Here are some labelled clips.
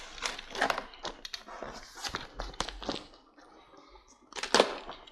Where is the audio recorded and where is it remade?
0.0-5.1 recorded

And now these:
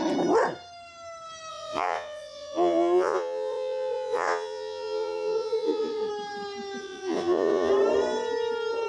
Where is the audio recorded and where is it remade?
0.0-1.5 recorded; 1.5-6.1 remade; 6.1-6.8 recorded; 6.8-7.7 remade; 7.7-8.9 recorded

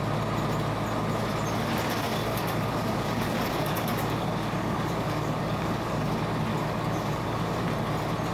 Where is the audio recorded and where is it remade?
0.0-2.3 recorded; 2.3-6.1 remade; 6.1-6.5 recorded; 6.5-7.6 remade; 7.6-8.3 recorded

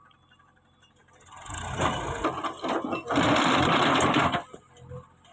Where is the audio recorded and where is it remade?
0.0-5.3 recorded

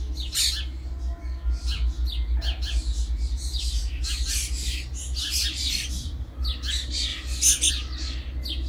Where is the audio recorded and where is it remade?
0.0-8.7 recorded

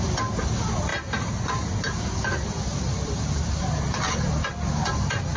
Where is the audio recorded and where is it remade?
0.0-0.9 recorded; 0.9-4.1 remade; 4.1-5.4 recorded